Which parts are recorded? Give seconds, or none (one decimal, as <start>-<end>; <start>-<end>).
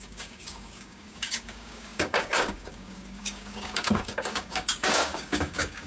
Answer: none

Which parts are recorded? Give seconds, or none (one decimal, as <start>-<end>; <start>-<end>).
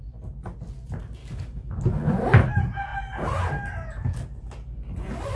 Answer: 0.0-1.2; 1.8-5.4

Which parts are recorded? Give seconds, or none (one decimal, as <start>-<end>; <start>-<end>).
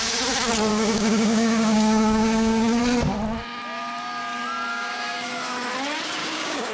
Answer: 0.0-0.7; 2.8-4.7; 5.3-6.2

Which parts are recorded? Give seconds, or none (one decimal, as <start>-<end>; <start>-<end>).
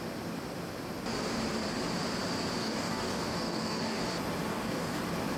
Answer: 0.0-2.6; 4.0-4.5; 5.0-5.4